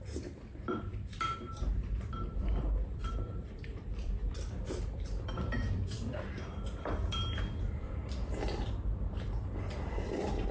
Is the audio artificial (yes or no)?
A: yes